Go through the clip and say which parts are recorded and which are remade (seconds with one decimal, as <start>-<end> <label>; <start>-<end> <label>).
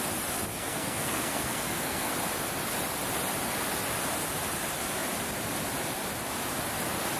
0.0-0.5 recorded; 0.5-2.1 remade; 2.1-7.2 recorded